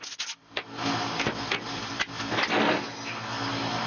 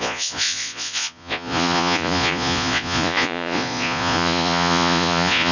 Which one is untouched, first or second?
first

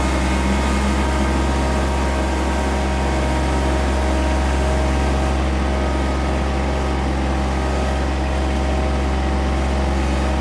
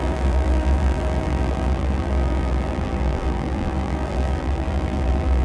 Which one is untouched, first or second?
first